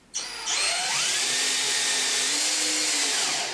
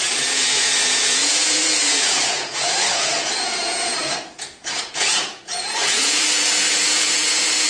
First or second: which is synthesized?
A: second